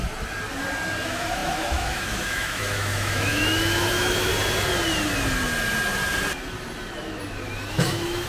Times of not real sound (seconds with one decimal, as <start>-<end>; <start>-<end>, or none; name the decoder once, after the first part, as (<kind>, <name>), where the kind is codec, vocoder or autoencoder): 1.0-4.3 (autoencoder, DAC-VAE); 7.7-8.3